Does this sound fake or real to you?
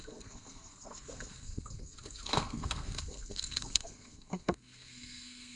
fake